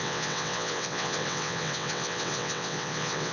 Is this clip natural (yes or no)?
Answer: no